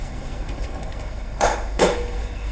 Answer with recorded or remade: remade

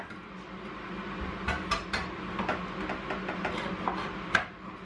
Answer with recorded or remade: recorded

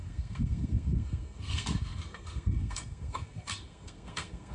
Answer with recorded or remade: remade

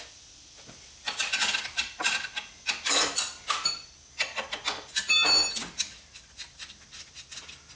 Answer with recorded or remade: recorded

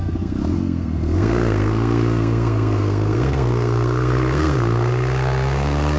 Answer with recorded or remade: remade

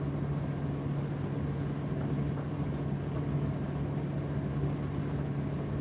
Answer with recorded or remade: recorded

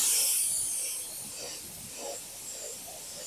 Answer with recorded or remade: recorded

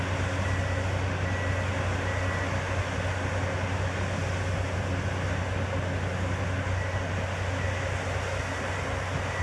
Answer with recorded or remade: recorded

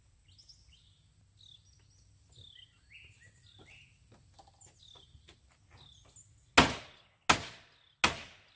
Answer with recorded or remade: recorded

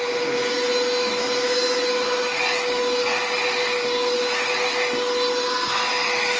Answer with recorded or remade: recorded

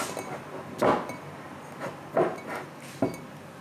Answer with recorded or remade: recorded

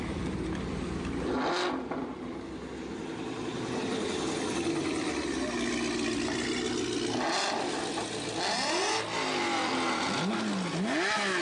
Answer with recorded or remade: recorded